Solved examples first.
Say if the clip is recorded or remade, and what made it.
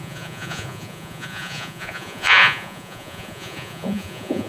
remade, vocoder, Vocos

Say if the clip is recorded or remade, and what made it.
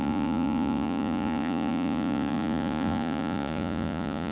remade, vocoder, Vocos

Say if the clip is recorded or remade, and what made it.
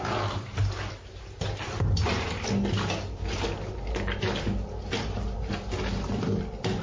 recorded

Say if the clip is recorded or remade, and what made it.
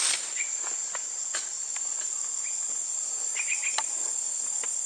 recorded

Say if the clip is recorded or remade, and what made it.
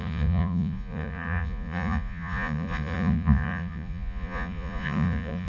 remade, vocoder, Vocos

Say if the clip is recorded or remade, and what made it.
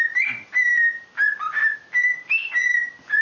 recorded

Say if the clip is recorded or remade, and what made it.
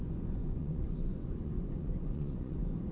remade, vocoder, Vocos